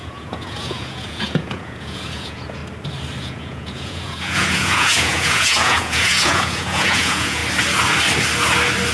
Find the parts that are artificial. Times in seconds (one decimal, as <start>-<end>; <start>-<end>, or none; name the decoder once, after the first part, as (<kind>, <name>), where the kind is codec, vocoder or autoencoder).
0.0-2.6 (vocoder, Vocos); 3.2-7.4